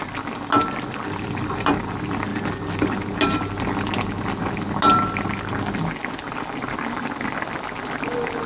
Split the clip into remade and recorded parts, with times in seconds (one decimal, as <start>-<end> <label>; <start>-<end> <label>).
0.0-8.5 recorded